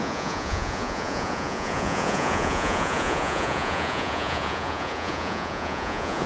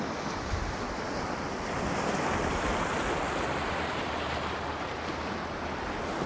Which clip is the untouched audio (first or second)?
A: second